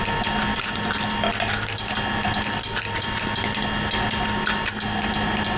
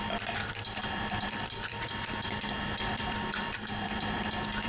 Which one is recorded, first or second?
first